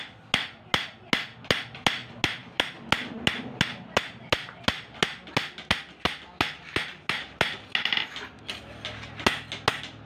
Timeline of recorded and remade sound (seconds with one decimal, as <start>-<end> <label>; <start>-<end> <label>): 0.0-10.1 recorded